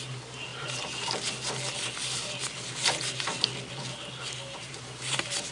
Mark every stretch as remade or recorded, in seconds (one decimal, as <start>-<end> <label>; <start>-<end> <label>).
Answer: 0.0-4.6 recorded; 4.6-5.5 remade

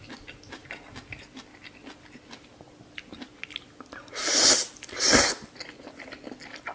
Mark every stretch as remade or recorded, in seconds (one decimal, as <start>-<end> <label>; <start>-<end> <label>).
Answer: 0.0-6.7 recorded

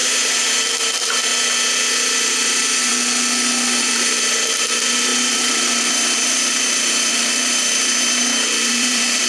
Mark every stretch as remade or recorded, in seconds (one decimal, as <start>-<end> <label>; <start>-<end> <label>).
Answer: 0.0-1.3 remade; 1.3-1.9 recorded; 1.9-2.9 remade; 2.9-3.8 recorded; 3.8-9.3 remade

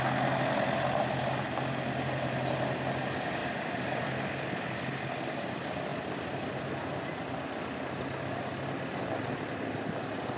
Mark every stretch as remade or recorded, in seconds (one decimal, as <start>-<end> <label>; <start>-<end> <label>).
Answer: 0.0-3.4 recorded; 3.4-5.5 remade; 5.5-5.9 recorded; 5.9-7.2 remade; 7.2-10.4 recorded

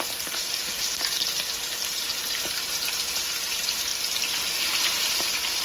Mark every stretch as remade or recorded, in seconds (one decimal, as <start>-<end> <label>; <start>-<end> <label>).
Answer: 0.0-3.9 remade; 3.9-4.6 recorded; 4.6-5.6 remade